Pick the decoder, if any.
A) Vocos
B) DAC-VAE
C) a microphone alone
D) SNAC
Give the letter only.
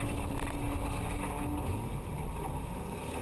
C